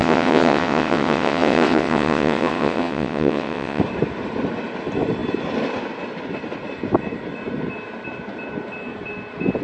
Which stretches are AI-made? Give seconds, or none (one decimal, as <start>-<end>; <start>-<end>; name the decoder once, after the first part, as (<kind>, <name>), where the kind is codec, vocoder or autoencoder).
0.0-3.8 (vocoder, WaveNeXt)